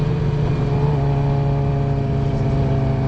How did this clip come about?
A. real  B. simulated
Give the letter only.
A